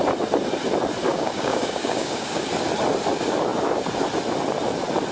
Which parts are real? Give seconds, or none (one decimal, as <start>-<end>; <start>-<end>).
0.0-1.1; 2.5-5.1